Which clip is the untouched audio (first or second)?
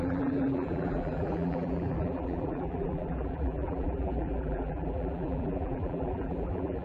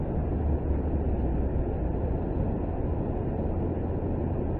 second